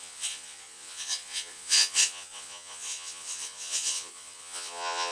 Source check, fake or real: fake